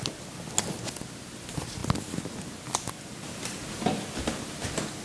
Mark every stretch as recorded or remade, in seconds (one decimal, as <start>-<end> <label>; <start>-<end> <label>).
0.0-5.0 recorded